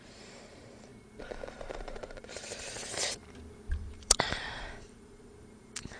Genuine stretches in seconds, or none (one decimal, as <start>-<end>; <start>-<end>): 0.9-1.5; 3.2-3.7